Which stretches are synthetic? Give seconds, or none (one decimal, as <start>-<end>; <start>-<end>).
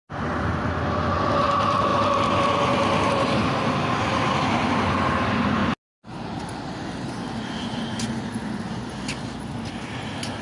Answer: none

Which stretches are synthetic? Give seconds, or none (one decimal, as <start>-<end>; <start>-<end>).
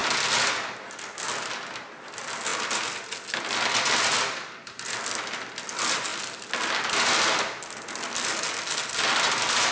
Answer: none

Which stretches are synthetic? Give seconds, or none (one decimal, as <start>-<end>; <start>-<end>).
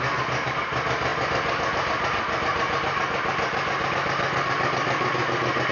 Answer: none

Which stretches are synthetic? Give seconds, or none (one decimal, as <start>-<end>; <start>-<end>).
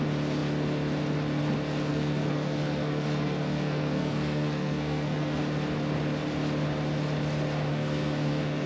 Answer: 1.9-5.4; 7.7-8.7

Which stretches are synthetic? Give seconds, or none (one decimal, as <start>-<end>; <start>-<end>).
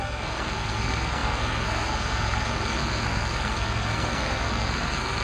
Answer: 0.0-5.2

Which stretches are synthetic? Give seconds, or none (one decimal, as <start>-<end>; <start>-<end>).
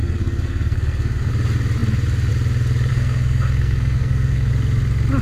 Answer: 0.0-1.3; 2.9-4.5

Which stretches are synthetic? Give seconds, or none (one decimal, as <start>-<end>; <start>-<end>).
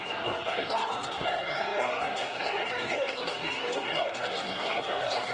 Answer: 0.0-5.3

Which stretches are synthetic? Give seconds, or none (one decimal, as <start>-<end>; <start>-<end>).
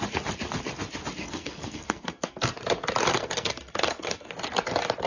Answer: 1.2-2.5; 3.1-4.3